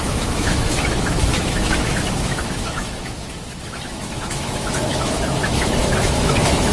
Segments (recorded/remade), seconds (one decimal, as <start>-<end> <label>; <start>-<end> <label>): 0.0-6.7 remade

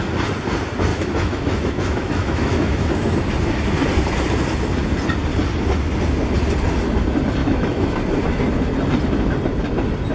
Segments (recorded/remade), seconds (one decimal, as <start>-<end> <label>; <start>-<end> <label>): 0.0-0.9 recorded; 0.9-3.1 remade; 3.1-7.4 recorded; 7.4-8.0 remade; 8.0-10.1 recorded

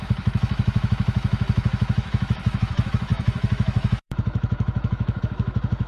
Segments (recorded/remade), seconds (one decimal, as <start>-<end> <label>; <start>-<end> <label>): 0.0-5.9 remade

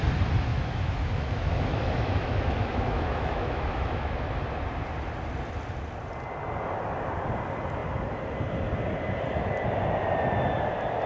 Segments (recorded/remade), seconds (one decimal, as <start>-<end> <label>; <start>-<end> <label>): 0.0-0.5 recorded; 0.5-4.2 remade; 4.2-11.1 recorded